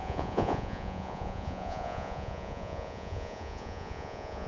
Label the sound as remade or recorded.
remade